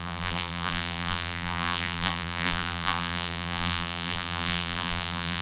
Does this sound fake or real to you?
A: fake